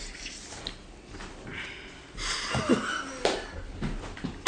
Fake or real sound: real